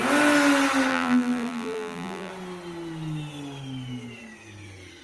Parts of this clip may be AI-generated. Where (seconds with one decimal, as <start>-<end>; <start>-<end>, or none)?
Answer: 0.9-2.3